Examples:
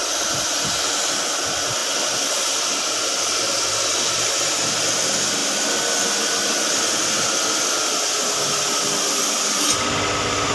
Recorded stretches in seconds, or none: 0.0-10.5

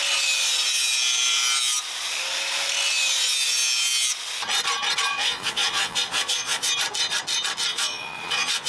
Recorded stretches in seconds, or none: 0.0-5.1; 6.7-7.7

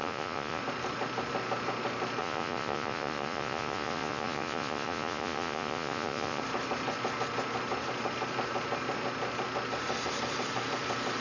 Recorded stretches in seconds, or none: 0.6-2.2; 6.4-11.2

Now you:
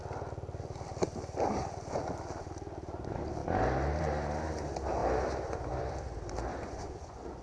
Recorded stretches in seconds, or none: 0.0-6.5